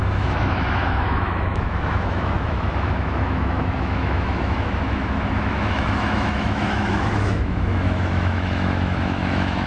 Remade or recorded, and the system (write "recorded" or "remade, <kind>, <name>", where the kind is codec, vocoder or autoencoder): remade, autoencoder, DAC-VAE